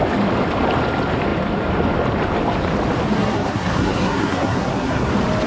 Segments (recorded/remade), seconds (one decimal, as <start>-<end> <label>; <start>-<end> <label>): 0.0-3.1 recorded; 3.1-5.1 remade; 5.1-5.5 recorded